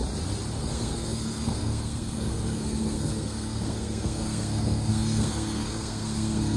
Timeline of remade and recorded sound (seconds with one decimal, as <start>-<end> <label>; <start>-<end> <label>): 0.0-0.6 recorded; 0.6-6.6 remade